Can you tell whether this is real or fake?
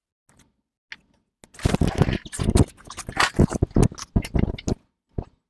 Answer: real